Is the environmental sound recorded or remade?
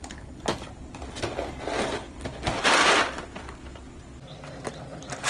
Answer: recorded